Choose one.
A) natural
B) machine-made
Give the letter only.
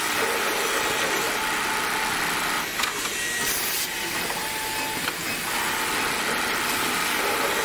A